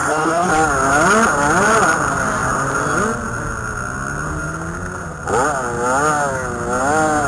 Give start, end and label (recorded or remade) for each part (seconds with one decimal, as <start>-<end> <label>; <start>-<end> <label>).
0.0-0.5 remade; 0.5-7.3 recorded